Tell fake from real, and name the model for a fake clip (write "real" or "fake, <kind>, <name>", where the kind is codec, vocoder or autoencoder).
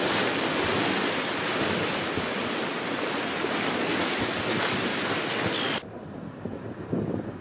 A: real